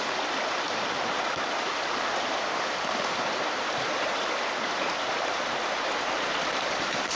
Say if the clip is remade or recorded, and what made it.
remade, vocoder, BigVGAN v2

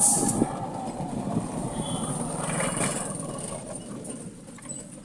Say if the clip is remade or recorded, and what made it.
recorded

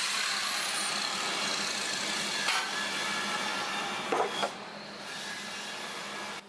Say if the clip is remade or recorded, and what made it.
recorded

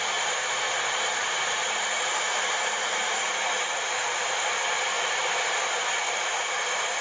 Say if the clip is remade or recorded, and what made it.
remade, vocoder, BigVGAN v2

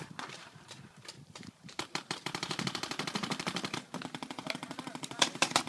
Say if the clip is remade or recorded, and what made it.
remade, vocoder, BigVGAN v2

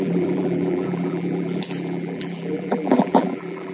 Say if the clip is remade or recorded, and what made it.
remade, vocoder, BigVGAN v2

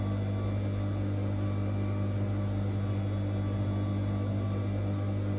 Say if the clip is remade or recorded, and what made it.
recorded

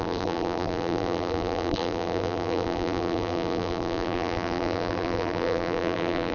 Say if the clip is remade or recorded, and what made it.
remade, vocoder, BigVGAN v2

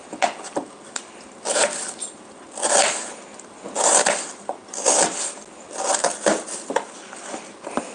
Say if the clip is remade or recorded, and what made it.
recorded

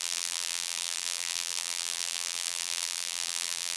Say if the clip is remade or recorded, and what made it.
remade, vocoder, BigVGAN v2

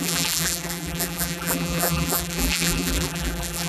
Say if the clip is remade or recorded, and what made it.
remade, vocoder, BigVGAN v2